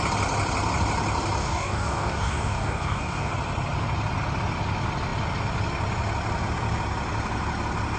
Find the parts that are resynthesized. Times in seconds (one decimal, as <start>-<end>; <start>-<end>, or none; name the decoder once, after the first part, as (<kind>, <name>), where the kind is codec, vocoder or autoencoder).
1.4-3.3 (codec, DAC)